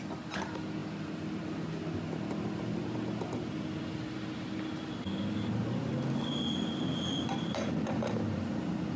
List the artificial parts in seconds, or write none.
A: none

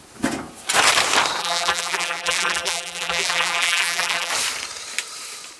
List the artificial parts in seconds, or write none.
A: 1.4-4.3

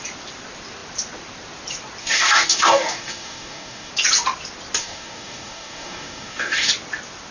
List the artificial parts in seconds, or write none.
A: 2.0-3.9; 4.8-6.7

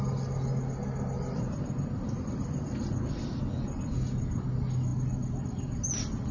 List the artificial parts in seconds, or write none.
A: none

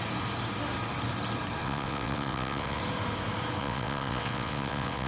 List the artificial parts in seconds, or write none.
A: 1.6-2.8; 3.6-5.1

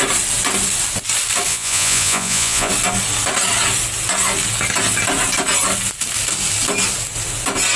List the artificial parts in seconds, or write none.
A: 1.5-2.7